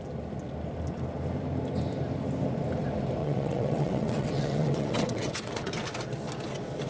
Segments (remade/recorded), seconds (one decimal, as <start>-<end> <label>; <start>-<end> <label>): 0.0-3.2 recorded; 3.2-5.7 remade; 5.7-6.9 recorded